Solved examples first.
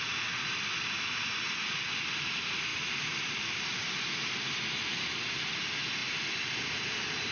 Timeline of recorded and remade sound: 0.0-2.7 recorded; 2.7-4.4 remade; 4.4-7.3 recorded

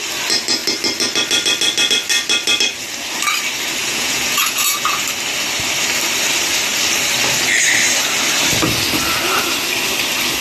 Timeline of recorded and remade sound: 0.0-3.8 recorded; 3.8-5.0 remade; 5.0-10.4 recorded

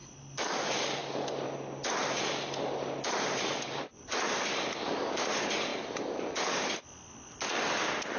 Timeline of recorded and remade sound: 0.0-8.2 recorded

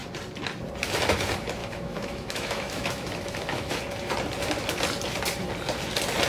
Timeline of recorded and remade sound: 0.0-1.6 recorded; 1.6-3.8 remade; 3.8-6.3 recorded